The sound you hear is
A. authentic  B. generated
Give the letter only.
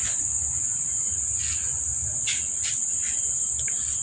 A